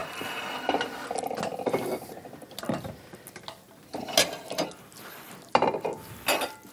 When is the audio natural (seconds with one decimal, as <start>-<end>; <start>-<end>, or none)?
0.0-6.7